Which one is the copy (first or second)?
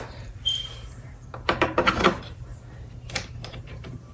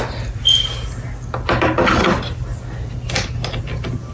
first